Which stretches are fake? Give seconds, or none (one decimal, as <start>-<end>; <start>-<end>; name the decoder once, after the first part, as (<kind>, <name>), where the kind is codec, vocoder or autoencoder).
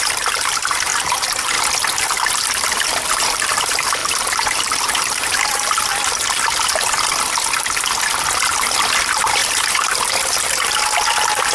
0.0-0.9 (vocoder, BigVGAN v2); 2.8-5.9; 9.0-11.5